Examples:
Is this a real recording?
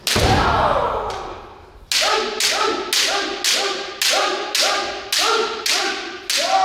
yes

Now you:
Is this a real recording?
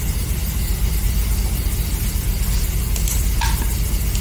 yes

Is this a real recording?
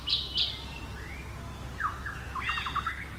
yes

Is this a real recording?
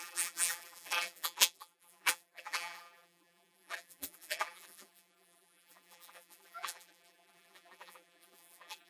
no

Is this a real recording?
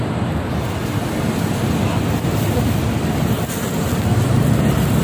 yes